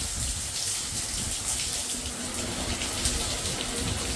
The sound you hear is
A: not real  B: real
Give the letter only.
B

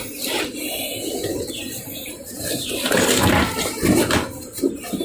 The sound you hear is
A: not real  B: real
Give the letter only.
B